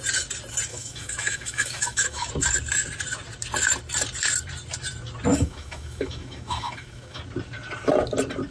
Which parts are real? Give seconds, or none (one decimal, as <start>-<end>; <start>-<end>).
0.0-0.7; 2.3-5.3; 7.2-8.5

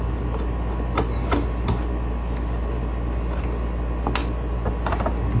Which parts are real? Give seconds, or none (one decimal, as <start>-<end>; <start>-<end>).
0.0-5.4

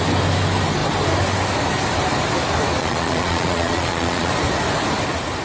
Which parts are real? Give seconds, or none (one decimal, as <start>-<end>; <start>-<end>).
0.0-2.8; 4.3-5.4

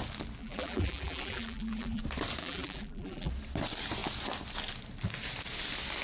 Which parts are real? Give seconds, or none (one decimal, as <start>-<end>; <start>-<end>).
0.0-0.4; 2.0-2.4; 3.3-6.0